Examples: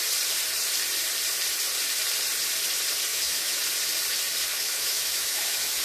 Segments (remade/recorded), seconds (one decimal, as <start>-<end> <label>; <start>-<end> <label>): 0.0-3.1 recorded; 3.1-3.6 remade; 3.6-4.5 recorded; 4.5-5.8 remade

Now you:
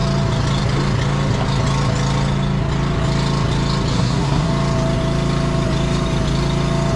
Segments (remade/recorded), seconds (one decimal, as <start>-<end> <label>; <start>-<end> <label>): 0.0-3.9 recorded; 3.9-4.5 remade; 4.5-7.0 recorded

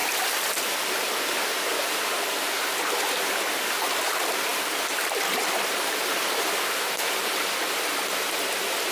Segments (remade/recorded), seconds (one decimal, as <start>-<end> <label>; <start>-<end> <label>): 0.0-8.9 recorded

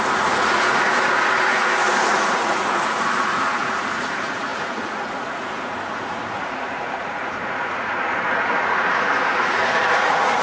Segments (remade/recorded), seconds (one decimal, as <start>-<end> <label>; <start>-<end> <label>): 0.0-10.4 remade